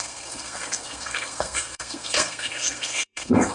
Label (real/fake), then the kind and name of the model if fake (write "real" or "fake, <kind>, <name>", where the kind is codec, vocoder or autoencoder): fake, codec, SNAC